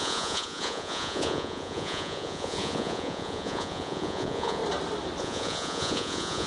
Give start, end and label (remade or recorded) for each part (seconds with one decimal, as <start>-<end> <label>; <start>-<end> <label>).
0.0-4.6 remade; 4.6-5.2 recorded; 5.2-6.5 remade